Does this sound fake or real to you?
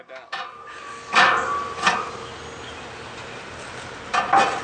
real